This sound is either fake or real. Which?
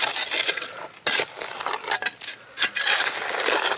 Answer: real